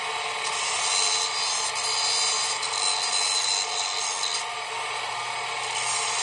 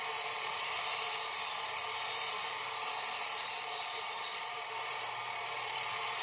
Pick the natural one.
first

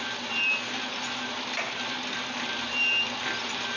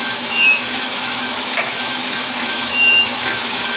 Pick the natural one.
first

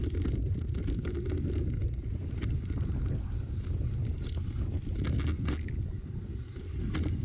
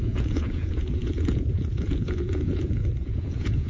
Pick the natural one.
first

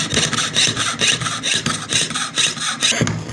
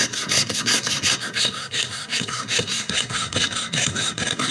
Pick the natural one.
first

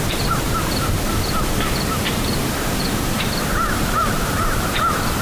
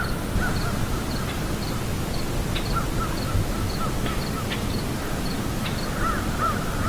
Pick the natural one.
second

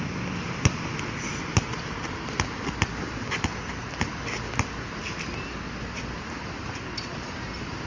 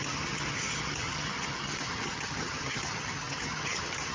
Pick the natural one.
first